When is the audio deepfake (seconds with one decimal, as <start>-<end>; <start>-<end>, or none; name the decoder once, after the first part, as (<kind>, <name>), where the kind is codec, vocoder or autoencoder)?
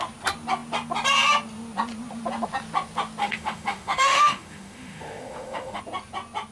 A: 3.2-5.8 (autoencoder, DAC-VAE)